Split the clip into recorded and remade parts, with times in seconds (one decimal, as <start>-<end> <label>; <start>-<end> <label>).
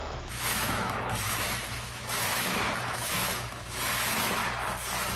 0.0-4.4 remade; 4.4-5.2 recorded